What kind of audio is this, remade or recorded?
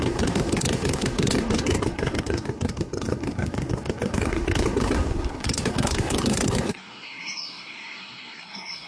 remade